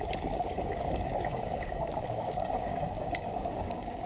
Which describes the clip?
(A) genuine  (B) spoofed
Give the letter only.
B